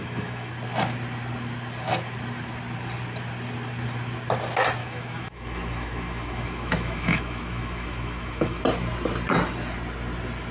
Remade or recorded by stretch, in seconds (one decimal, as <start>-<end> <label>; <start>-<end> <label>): 0.0-0.5 remade; 0.5-4.8 recorded; 4.8-8.6 remade; 8.6-10.5 recorded